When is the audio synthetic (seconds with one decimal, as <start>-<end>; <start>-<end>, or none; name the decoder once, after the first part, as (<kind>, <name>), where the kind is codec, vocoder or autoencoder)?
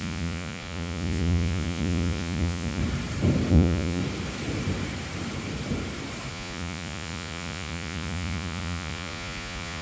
0.0-2.8 (vocoder, Vocos); 3.5-4.0; 6.3-9.8